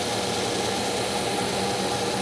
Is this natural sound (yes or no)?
yes